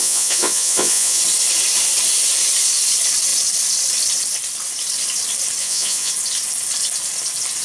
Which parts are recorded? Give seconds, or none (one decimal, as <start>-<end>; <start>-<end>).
1.2-5.6; 6.1-7.6